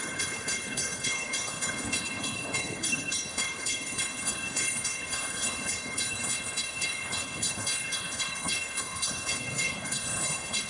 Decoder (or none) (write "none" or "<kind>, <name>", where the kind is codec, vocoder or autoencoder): codec, HILCodec